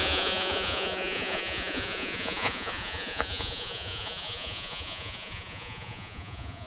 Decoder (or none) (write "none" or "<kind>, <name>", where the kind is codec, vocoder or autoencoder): vocoder, Vocos